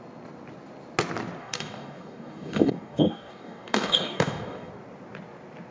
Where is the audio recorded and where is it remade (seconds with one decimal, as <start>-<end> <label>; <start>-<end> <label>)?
0.0-1.4 recorded; 1.4-4.7 remade; 4.7-5.7 recorded